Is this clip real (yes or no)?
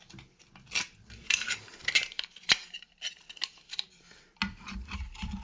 yes